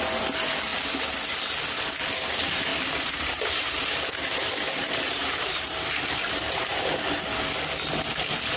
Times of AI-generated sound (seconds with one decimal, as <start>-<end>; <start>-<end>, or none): 2.7-7.2